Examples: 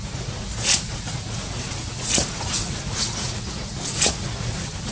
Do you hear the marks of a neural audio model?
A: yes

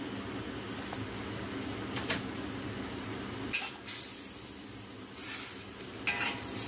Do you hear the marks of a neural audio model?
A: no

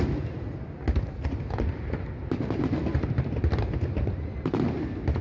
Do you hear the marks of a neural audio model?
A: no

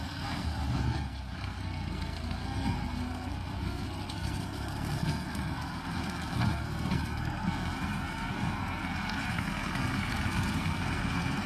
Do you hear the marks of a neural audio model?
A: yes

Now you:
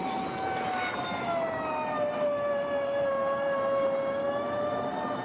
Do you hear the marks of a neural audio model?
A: no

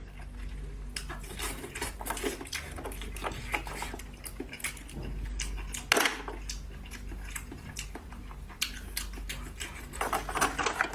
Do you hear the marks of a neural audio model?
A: no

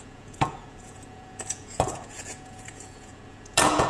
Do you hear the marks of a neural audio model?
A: yes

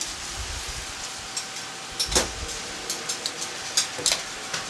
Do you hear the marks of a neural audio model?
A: no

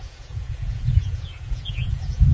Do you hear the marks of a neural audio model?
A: yes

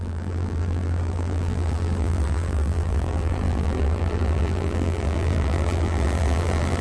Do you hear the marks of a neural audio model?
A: yes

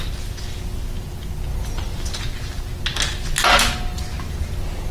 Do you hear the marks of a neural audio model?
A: no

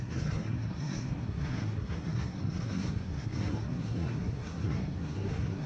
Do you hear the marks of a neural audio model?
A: yes